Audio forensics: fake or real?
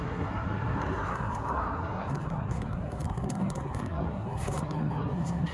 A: fake